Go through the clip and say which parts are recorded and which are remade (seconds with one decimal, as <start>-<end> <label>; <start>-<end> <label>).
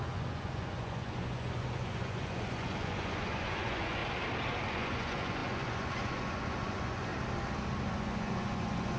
0.0-4.0 remade; 4.0-4.7 recorded; 4.7-7.1 remade; 7.1-7.9 recorded; 7.9-9.0 remade